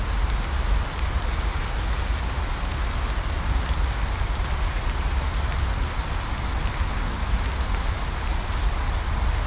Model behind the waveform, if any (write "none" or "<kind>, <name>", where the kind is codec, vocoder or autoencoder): none